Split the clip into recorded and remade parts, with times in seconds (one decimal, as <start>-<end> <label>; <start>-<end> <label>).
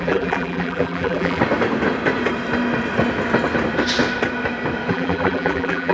0.0-1.4 remade; 1.4-4.9 recorded; 4.9-5.9 remade